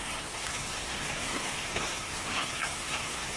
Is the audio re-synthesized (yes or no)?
yes